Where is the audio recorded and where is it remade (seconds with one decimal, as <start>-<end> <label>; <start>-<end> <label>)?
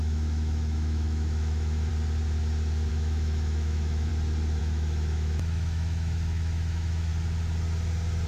0.0-1.9 remade; 1.9-2.9 recorded; 2.9-4.1 remade; 4.1-4.6 recorded; 4.6-7.1 remade; 7.1-8.3 recorded